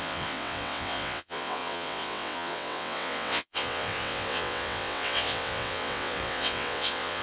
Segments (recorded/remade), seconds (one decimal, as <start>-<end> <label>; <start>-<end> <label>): 0.0-7.2 remade